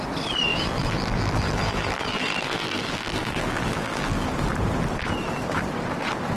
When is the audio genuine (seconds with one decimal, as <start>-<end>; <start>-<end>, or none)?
0.0-0.5; 4.3-6.4